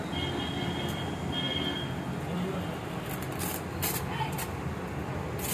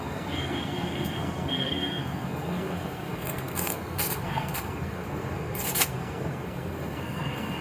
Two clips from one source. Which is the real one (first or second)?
first